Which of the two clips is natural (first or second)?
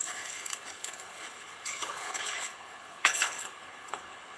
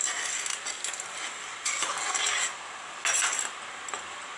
second